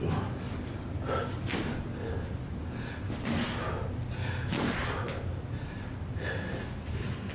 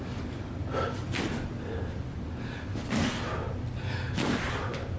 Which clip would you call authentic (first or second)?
first